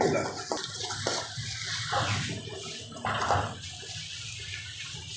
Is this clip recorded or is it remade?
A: recorded